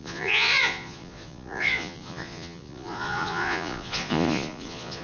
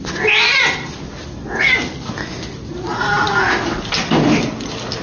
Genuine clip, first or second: second